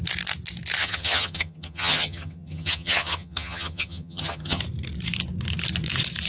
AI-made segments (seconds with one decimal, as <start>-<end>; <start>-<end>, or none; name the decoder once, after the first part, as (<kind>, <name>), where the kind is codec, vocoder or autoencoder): 0.8-4.6 (vocoder, HiFi-GAN)